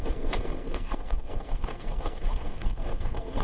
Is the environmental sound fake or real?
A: fake